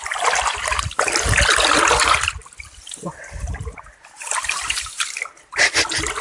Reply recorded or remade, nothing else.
recorded